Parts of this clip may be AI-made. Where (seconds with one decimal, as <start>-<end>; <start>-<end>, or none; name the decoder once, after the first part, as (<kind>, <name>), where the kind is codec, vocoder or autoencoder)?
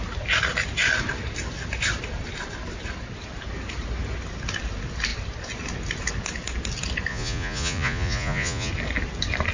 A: 7.1-8.7 (vocoder, Vocos)